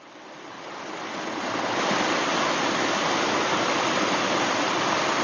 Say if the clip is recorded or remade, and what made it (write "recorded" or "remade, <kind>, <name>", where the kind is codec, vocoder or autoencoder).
recorded